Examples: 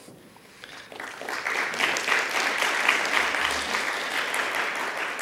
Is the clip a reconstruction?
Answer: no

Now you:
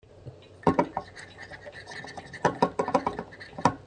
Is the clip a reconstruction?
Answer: no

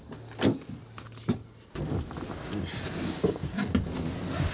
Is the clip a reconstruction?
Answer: no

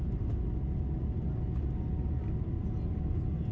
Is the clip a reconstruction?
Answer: no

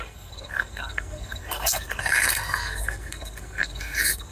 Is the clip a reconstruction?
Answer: yes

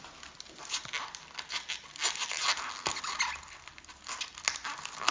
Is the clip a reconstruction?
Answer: no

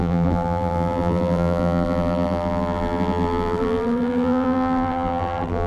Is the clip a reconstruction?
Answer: yes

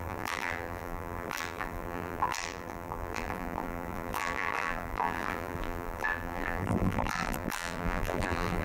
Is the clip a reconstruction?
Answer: yes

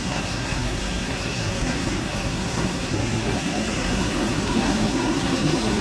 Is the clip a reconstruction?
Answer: yes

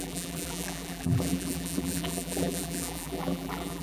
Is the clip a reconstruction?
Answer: yes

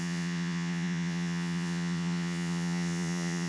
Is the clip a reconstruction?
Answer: yes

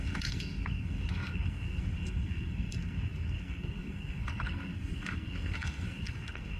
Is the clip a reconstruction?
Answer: yes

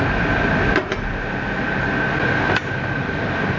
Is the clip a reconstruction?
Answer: no